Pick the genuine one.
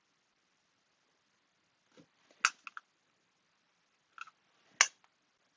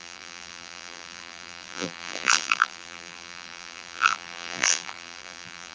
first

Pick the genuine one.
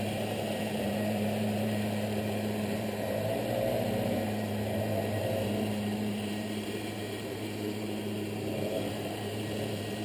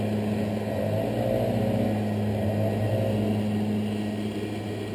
second